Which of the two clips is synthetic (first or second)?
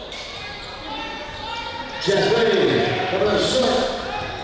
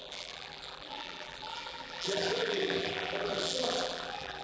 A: second